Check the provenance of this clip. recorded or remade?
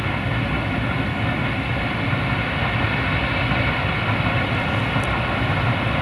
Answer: recorded